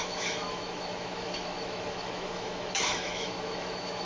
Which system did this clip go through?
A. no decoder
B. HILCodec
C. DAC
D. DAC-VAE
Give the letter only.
D